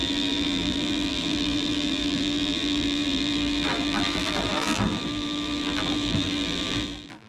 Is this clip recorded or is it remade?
remade